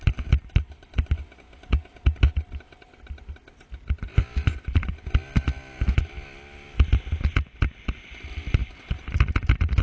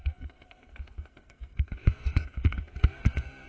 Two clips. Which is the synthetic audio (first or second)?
second